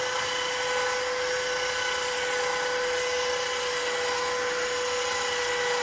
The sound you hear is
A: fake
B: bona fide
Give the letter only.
B